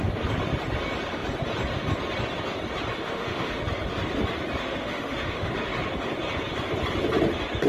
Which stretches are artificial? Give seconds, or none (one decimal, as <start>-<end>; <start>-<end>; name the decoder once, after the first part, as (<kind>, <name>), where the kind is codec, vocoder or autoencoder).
3.0-3.6 (autoencoder, DAC-VAE); 4.6-5.5